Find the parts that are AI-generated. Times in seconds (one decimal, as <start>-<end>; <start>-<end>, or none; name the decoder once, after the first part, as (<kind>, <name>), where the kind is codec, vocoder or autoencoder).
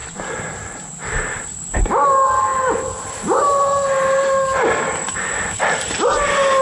0.0-0.5 (vocoder, BigVGAN v2)